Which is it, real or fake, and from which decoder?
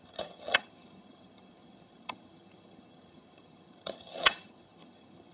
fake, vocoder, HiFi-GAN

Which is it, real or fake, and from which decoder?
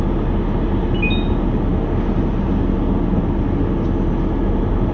real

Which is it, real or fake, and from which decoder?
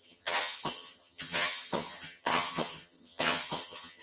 fake, vocoder, HiFi-GAN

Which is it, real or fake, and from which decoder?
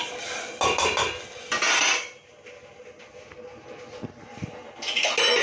real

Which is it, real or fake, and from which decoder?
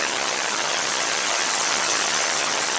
fake, vocoder, HiFi-GAN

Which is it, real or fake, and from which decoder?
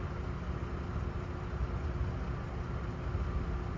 real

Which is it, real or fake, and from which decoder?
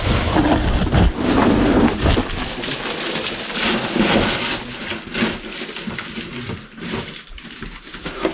real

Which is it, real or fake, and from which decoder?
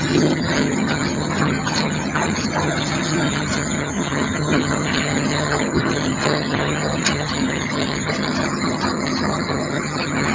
fake, vocoder, HiFi-GAN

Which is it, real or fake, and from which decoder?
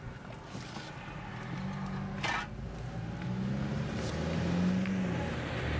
real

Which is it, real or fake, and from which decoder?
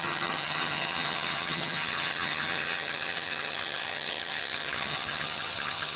fake, vocoder, HiFi-GAN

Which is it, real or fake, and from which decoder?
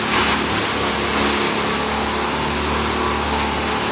real